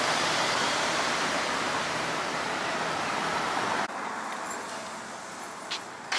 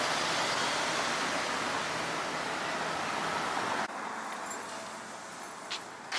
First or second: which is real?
second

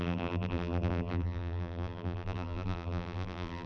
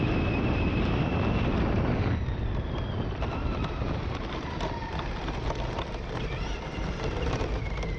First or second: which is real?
second